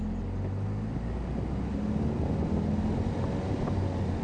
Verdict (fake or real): real